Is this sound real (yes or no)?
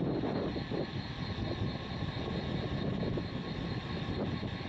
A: yes